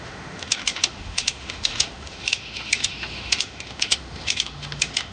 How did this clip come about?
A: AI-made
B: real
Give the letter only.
A